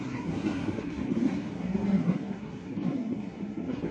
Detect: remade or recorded remade